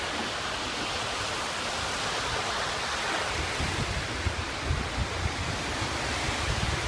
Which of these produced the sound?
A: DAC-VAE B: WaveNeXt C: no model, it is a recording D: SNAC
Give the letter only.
C